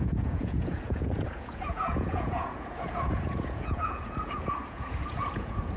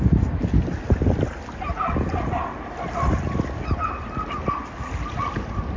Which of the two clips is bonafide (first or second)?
second